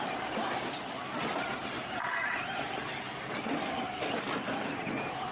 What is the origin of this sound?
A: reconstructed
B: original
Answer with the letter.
B